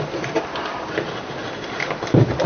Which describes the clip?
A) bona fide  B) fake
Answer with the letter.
A